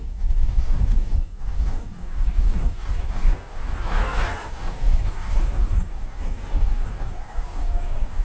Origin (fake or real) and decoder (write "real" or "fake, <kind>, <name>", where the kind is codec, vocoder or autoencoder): fake, codec, DAC